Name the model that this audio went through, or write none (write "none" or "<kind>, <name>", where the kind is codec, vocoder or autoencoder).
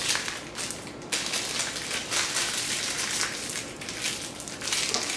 none